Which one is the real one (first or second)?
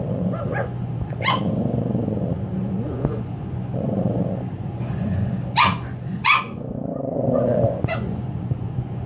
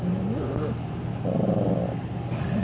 second